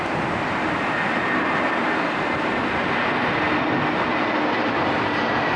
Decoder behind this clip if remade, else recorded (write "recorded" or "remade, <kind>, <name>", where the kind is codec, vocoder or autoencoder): recorded